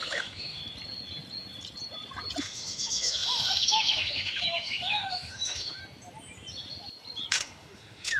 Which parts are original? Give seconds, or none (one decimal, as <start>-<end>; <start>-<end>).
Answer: 0.6-2.4; 5.8-7.3